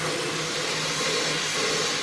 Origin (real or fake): real